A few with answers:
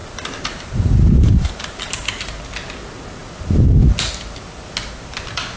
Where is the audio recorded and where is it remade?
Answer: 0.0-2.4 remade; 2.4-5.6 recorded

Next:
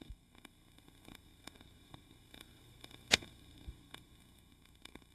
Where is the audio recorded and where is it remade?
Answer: 0.0-5.1 remade

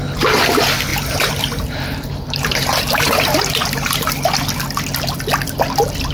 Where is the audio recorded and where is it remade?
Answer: 0.0-0.9 recorded; 0.9-4.1 remade; 4.1-6.1 recorded